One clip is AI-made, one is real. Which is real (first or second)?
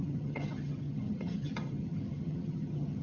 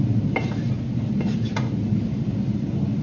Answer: second